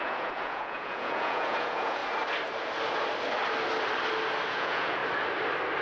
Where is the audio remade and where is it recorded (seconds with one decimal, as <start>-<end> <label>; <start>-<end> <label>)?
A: 0.0-2.0 remade; 2.0-4.5 recorded; 4.5-5.0 remade; 5.0-5.8 recorded